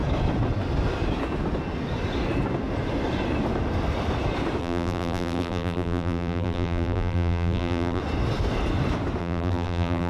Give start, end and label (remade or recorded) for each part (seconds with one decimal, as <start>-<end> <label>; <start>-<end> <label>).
0.0-4.6 recorded; 4.6-8.0 remade; 8.0-9.2 recorded; 9.2-10.1 remade